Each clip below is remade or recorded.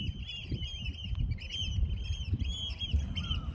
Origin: recorded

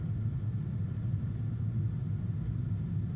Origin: recorded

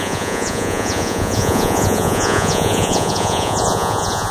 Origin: remade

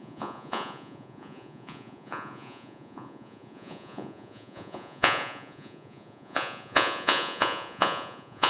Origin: remade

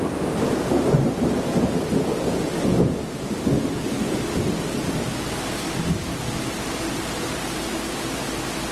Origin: recorded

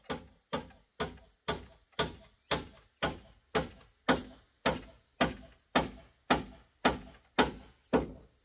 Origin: recorded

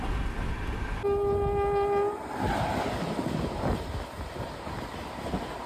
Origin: recorded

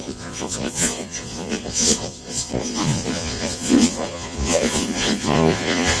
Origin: remade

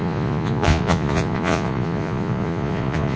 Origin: remade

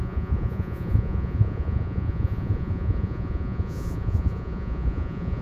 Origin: remade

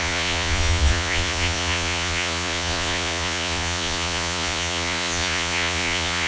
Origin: remade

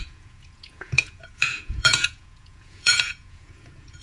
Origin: remade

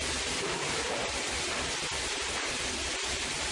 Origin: recorded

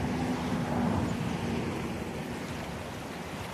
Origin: recorded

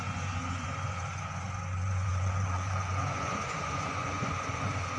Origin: remade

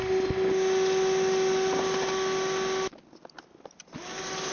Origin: recorded